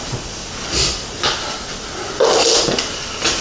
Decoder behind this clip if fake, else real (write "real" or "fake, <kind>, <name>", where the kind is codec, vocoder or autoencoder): real